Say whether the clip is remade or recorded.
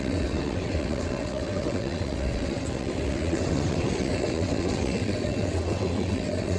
remade